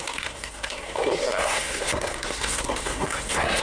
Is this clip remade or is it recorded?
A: remade